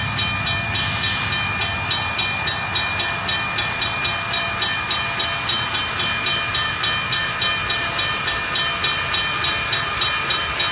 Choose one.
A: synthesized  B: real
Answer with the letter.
B